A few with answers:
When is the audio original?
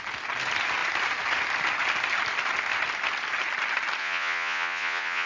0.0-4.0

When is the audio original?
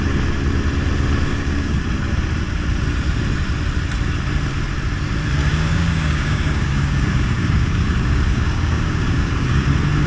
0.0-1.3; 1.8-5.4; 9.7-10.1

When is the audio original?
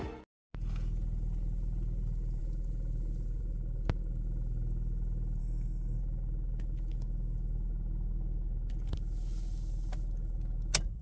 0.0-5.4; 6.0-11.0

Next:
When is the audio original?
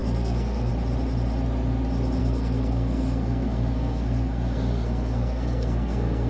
0.7-2.2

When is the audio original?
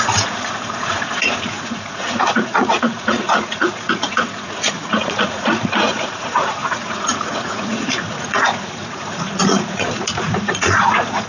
none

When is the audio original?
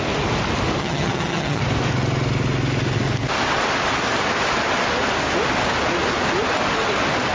0.0-0.8; 1.6-7.3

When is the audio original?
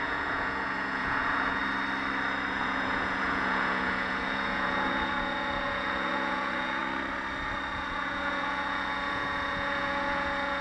1.6-2.5; 6.8-7.7